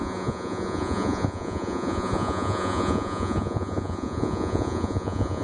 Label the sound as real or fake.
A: fake